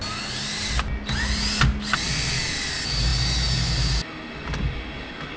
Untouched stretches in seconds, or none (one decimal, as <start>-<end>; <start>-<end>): 0.0-5.4